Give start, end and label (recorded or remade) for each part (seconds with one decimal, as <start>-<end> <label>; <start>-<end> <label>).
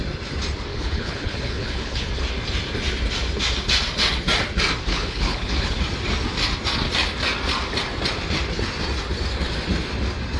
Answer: 0.0-0.7 recorded; 0.7-2.1 remade; 2.1-4.9 recorded; 4.9-5.8 remade; 5.8-10.4 recorded